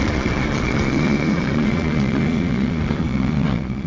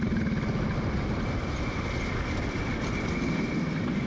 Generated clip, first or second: first